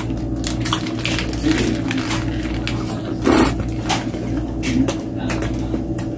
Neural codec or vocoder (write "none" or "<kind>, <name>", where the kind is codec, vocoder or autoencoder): none